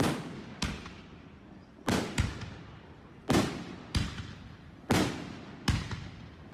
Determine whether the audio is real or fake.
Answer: real